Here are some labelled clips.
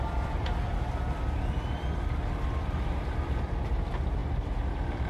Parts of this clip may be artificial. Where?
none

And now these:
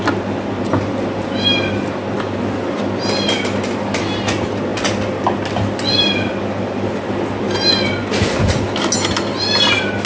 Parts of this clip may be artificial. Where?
none